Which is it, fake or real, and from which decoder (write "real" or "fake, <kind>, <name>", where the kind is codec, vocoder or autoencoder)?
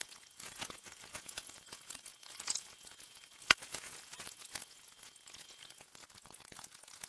fake, vocoder, Vocos